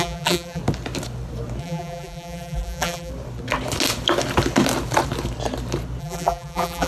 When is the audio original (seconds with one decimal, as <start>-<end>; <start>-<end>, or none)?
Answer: 0.6-1.6; 3.1-6.0